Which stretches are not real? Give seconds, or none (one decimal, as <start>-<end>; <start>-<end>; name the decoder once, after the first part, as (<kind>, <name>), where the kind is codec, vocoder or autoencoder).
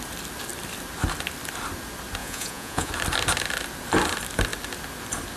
2.2-2.9 (vocoder, Vocos)